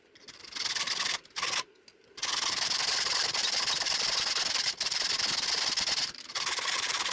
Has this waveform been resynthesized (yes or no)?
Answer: no